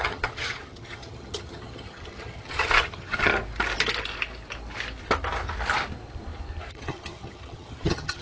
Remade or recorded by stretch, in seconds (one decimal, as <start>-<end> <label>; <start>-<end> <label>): 0.0-3.3 remade; 3.3-6.7 recorded; 6.7-8.2 remade